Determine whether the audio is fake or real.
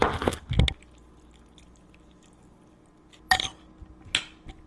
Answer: real